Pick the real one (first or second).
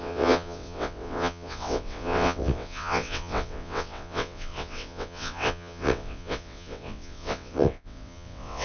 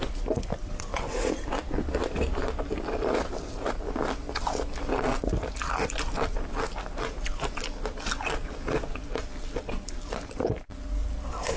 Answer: second